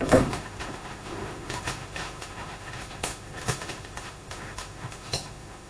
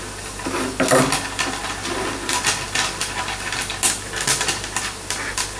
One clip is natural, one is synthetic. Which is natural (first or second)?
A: second